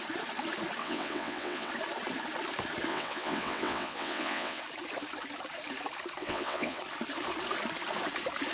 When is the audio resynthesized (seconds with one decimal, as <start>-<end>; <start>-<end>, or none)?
0.8-1.7; 2.9-4.6; 6.2-6.8